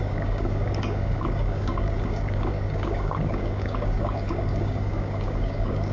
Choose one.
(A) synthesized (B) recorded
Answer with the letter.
A